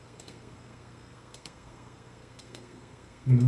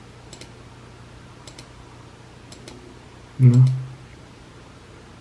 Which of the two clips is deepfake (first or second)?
first